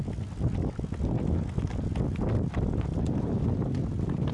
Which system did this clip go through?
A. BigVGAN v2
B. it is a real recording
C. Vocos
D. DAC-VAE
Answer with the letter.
B